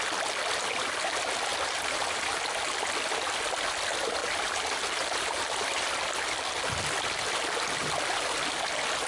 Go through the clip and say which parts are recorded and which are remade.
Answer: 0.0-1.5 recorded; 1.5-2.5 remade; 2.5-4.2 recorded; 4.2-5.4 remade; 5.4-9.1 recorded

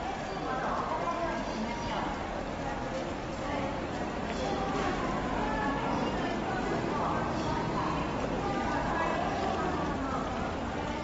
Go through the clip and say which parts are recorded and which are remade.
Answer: 0.0-8.1 recorded; 8.1-8.7 remade; 8.7-11.0 recorded

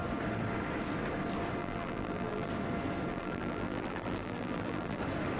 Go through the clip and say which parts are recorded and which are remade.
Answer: 0.0-1.6 recorded; 1.6-2.5 remade; 2.5-3.1 recorded; 3.1-5.0 remade; 5.0-5.4 recorded

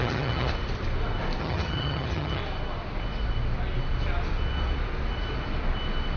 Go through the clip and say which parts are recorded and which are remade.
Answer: 0.0-0.5 remade; 0.5-1.4 recorded; 1.4-2.4 remade; 2.4-6.2 recorded

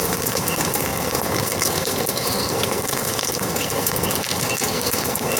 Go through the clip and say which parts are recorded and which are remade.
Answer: 0.0-5.4 remade